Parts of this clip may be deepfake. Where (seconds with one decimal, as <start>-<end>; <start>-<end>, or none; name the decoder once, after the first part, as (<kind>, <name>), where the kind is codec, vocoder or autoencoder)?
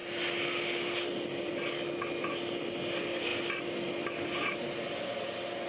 none